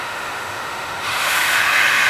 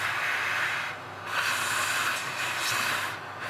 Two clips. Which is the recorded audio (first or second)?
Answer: second